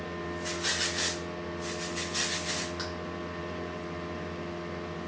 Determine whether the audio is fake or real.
real